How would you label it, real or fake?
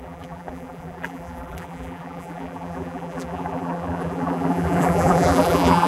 fake